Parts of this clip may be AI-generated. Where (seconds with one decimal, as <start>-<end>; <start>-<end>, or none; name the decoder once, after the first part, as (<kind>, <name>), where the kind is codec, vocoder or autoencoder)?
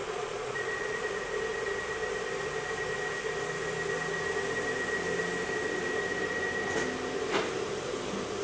0.0-1.1 (vocoder, Vocos)